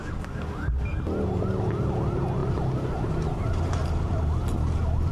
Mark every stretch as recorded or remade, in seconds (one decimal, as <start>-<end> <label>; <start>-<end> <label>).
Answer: 0.0-0.9 remade; 0.9-5.1 recorded